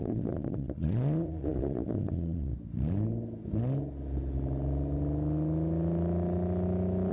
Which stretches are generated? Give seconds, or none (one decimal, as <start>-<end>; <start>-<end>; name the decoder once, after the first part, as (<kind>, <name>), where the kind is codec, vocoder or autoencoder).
0.0-2.5 (vocoder, Vocos)